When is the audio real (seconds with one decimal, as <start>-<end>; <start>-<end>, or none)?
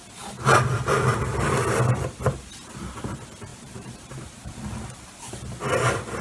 0.0-3.5; 4.5-6.2